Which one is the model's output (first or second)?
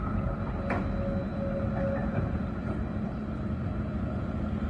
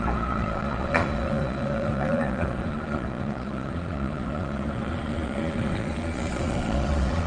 second